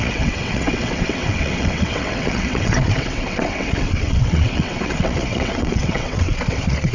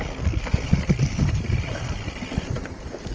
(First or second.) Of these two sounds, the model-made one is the first